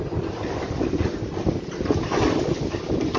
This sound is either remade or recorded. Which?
remade